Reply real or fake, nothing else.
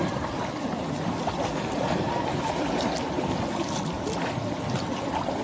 real